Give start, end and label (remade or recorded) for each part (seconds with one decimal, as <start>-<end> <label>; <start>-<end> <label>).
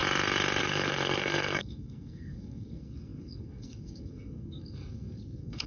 0.0-0.6 recorded; 0.6-5.7 remade